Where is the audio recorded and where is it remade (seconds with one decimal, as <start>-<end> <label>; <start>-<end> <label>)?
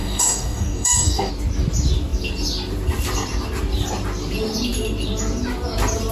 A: 0.0-1.3 remade; 1.3-6.1 recorded